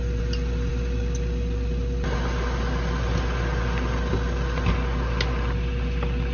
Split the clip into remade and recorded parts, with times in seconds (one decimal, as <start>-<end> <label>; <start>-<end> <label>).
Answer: 0.0-6.3 recorded